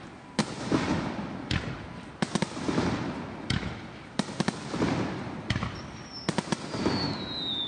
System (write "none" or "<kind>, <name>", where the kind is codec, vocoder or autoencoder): none